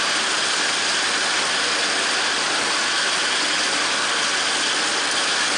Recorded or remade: remade